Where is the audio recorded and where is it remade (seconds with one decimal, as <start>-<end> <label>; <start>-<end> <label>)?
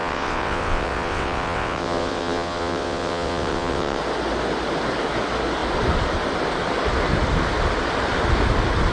0.0-4.0 remade; 4.0-8.9 recorded